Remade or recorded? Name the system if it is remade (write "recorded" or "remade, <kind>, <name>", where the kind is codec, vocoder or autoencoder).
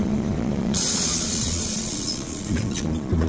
remade, vocoder, Vocos